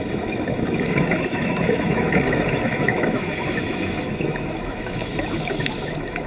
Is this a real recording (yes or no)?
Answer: no